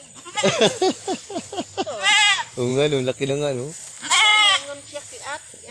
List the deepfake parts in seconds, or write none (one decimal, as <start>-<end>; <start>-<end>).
2.7-3.3; 4.3-5.2

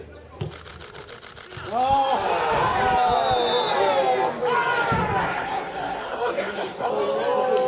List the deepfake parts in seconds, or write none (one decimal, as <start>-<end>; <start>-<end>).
5.2-6.9

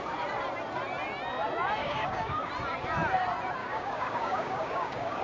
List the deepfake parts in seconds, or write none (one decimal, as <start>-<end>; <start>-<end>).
1.8-2.5; 3.6-5.2

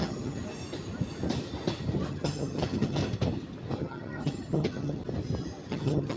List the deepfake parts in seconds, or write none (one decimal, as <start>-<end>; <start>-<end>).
0.0-0.4; 2.1-3.0; 3.8-5.0; 5.7-6.2

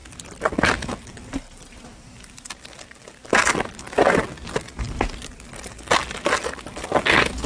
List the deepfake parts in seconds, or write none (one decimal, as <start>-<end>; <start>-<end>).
none

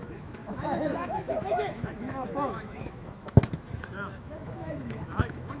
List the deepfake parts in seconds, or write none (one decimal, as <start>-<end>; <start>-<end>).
0.0-5.6

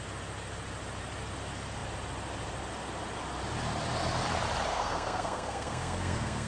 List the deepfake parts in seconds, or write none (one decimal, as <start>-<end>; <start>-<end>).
4.7-6.5

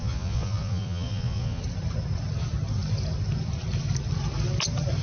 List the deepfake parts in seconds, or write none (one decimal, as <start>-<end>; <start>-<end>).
0.0-1.6